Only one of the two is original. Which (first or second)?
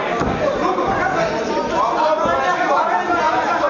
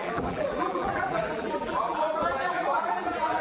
first